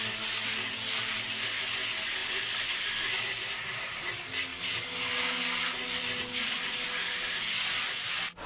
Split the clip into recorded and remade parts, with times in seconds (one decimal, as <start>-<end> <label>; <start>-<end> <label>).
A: 0.0-8.5 recorded

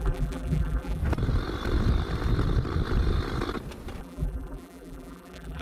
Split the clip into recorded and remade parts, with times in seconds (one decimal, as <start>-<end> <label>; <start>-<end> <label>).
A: 0.0-1.0 remade; 1.0-4.0 recorded; 4.0-5.6 remade